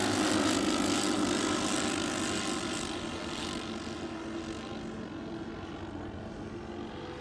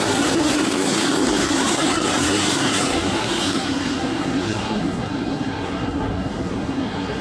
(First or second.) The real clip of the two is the first